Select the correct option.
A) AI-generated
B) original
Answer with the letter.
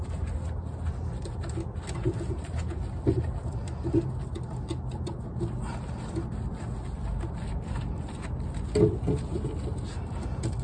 B